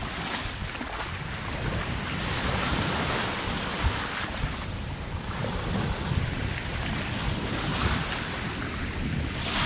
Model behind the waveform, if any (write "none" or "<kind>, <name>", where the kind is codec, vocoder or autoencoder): none